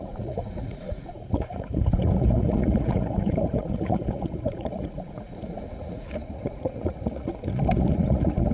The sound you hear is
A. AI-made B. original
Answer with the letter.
A